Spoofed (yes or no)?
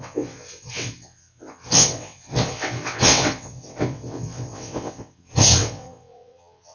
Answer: yes